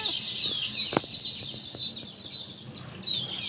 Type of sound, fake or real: real